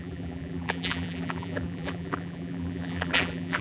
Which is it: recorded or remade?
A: remade